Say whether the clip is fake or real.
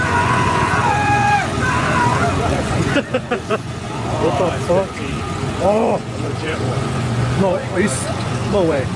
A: fake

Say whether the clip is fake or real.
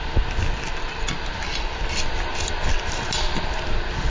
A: real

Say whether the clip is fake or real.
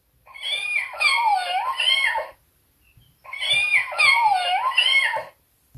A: real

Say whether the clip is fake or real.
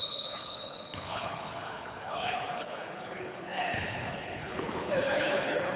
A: fake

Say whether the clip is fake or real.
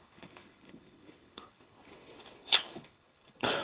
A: fake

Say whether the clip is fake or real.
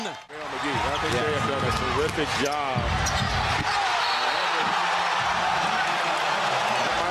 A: real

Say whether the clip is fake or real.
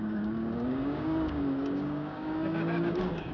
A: fake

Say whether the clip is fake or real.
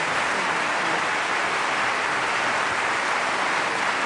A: real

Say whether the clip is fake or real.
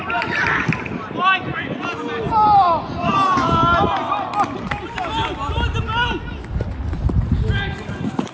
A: real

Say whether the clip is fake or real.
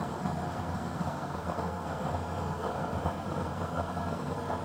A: fake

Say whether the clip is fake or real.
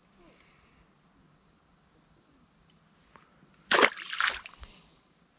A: real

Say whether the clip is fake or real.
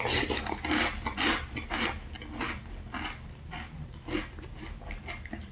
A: real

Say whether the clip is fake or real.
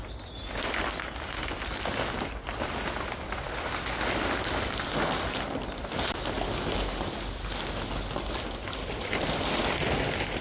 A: real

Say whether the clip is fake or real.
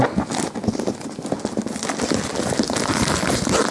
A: real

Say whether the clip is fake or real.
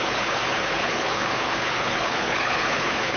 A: fake